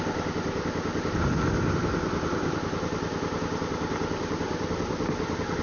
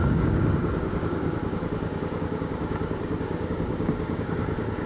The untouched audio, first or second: first